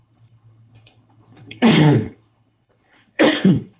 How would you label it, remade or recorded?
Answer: remade